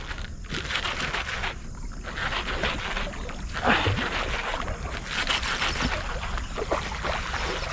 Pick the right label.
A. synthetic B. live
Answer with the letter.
B